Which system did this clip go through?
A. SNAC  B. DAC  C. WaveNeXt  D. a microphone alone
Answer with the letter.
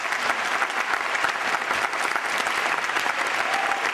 D